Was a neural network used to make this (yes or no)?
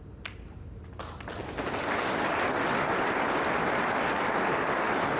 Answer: no